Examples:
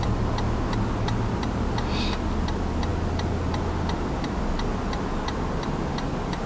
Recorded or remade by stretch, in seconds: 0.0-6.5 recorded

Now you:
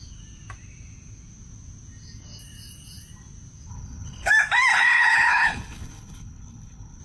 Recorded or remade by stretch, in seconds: 0.0-3.7 recorded; 3.7-4.3 remade; 4.3-4.7 recorded; 4.7-7.0 remade

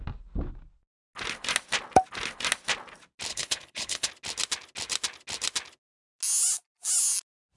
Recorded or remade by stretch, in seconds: 0.0-3.3 recorded; 3.3-4.1 remade; 4.1-7.6 recorded

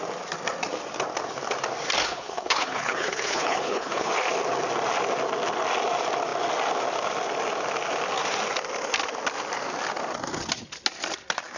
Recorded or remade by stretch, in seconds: 0.0-2.0 recorded; 2.0-4.1 remade; 4.1-11.6 recorded

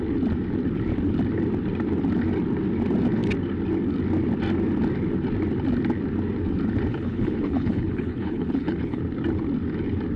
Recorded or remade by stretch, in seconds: 0.0-6.9 recorded; 6.9-9.0 remade; 9.0-10.2 recorded